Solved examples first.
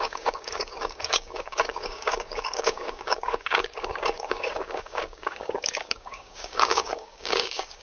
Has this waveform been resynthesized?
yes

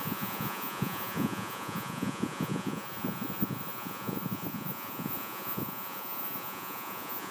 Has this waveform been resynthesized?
yes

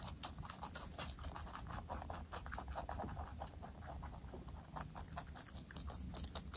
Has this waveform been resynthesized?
no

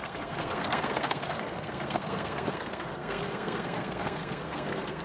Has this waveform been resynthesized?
yes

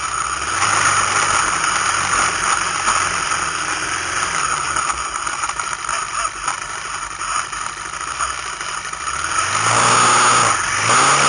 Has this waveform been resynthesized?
no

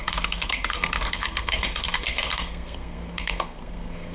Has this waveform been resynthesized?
yes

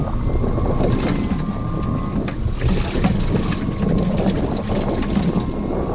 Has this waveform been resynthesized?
no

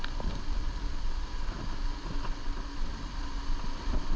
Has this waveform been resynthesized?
no